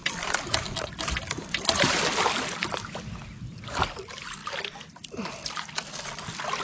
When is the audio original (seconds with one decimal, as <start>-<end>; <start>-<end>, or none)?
0.0-6.6